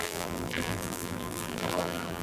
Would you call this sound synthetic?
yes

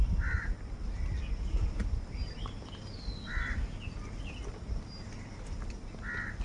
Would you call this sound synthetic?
no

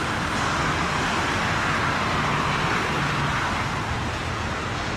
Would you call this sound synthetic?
no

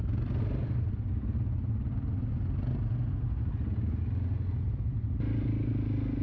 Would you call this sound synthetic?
no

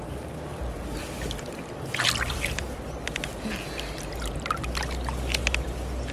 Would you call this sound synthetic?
no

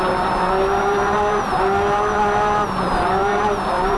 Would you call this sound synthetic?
yes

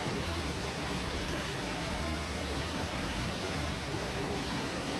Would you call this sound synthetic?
yes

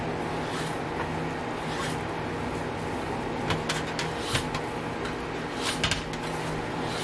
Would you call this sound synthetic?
no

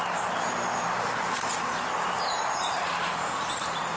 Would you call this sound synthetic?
yes